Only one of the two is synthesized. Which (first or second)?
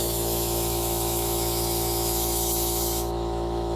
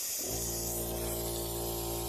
first